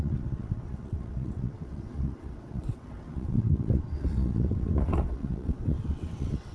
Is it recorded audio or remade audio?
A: remade